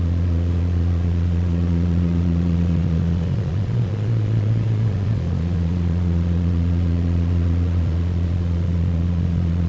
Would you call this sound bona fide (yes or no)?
no